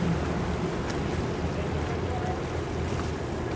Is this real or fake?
real